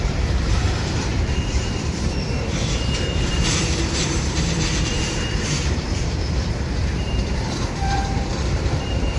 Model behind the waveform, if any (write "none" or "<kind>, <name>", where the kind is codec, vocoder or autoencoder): vocoder, BigVGAN v2